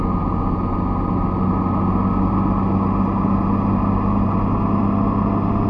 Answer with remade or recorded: recorded